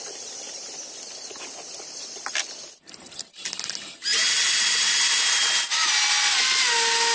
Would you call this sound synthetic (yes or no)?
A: no